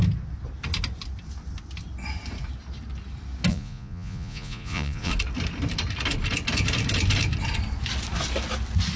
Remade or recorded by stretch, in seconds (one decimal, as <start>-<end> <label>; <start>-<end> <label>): 0.0-3.5 recorded; 3.5-5.1 remade; 5.1-9.0 recorded

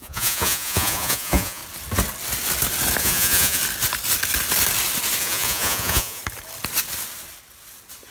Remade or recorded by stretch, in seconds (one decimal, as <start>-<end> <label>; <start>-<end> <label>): 0.0-1.6 remade; 1.6-3.0 recorded; 3.0-3.6 remade; 3.6-5.2 recorded; 5.2-6.2 remade; 6.2-8.1 recorded

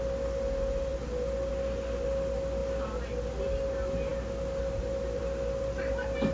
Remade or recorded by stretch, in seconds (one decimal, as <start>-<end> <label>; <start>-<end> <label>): 0.0-6.3 recorded

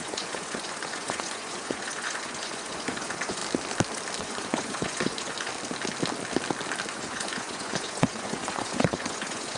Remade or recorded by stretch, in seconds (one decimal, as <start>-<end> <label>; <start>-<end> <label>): 0.0-3.4 remade; 3.4-4.2 recorded; 4.2-5.5 remade; 5.5-6.9 recorded; 6.9-9.6 remade

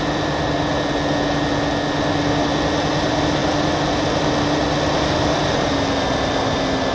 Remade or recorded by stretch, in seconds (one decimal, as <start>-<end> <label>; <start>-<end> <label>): 0.0-6.9 recorded

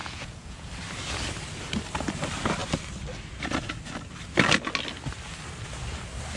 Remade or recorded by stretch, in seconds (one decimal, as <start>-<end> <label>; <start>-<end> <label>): 0.0-0.7 remade; 0.7-6.4 recorded

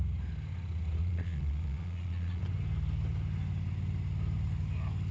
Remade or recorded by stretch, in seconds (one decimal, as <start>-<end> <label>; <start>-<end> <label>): 0.0-1.0 recorded; 1.0-2.4 remade; 2.4-5.1 recorded

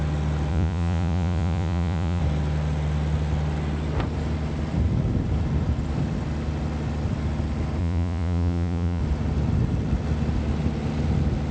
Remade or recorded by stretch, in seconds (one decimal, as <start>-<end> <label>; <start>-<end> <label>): 0.0-0.5 recorded; 0.5-2.2 remade; 2.2-7.8 recorded; 7.8-9.0 remade; 9.0-11.5 recorded